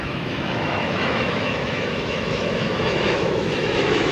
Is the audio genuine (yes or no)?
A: no